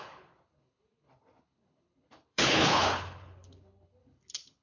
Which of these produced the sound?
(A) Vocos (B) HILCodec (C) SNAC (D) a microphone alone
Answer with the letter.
B